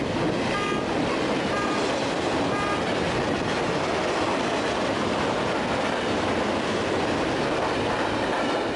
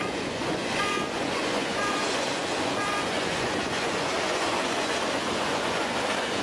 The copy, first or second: second